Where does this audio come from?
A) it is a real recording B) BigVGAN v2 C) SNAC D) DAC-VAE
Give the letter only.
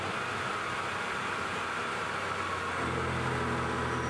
A